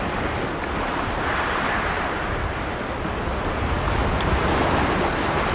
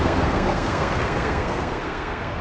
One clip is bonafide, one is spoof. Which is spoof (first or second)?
second